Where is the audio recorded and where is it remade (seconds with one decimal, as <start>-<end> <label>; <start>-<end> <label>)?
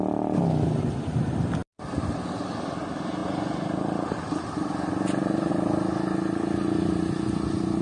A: 0.0-7.8 recorded